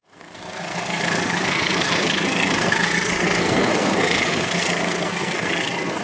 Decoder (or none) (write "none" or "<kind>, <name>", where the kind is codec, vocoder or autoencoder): codec, SNAC